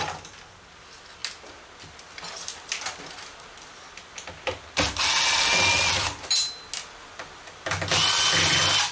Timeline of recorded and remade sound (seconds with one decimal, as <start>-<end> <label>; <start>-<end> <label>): 0.0-8.9 recorded